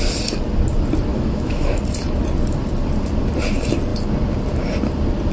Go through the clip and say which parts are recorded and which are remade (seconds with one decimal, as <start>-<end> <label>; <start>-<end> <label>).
0.0-1.1 recorded; 1.1-1.8 remade; 1.8-5.3 recorded